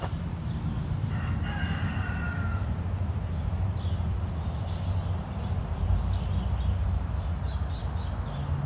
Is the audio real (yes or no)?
yes